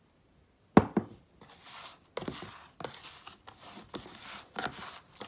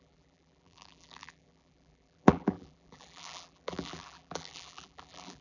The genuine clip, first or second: first